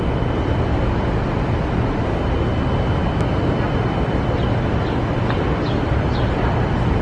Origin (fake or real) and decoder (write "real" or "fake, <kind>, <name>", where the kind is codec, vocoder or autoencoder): real